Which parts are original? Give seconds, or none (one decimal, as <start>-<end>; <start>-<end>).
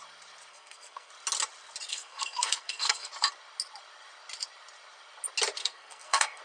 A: 0.0-0.5; 1.1-1.9; 3.1-5.6